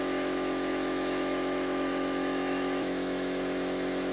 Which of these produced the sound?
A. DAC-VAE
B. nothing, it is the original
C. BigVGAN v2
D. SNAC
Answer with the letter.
A